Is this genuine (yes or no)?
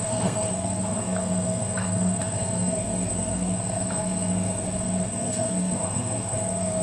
no